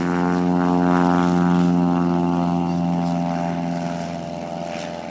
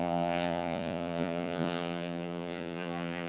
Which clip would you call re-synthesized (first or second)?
second